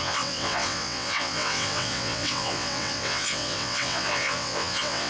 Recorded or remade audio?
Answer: remade